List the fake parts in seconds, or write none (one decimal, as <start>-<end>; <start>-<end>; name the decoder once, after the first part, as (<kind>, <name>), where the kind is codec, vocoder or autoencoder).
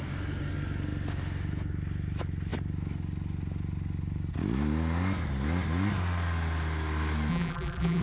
7.3-8.0 (vocoder, BigVGAN v2)